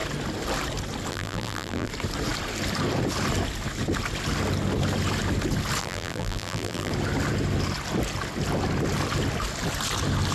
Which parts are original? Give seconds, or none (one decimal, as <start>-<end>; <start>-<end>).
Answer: 0.0-1.1; 1.9-5.8; 6.9-10.3